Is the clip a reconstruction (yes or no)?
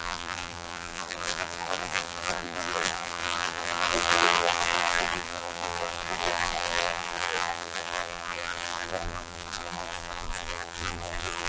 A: yes